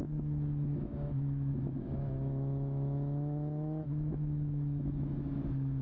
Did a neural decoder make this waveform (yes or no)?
yes